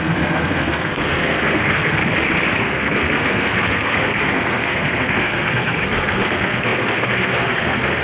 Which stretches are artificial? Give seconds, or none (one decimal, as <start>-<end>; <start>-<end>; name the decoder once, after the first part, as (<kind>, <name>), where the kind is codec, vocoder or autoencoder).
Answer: 0.0-2.0 (codec, SNAC); 2.6-8.0